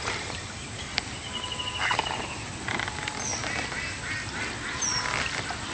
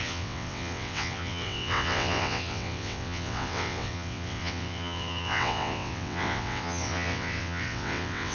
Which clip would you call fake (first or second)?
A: second